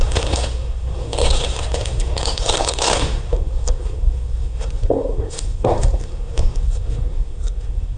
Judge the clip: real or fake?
fake